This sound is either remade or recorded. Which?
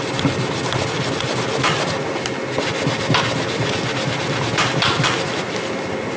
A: recorded